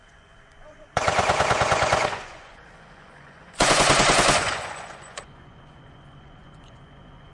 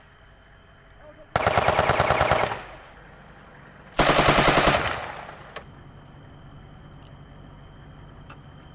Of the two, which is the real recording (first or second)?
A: second